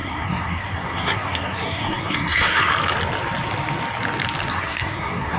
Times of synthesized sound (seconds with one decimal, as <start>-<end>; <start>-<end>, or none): 0.0-2.7; 4.5-5.4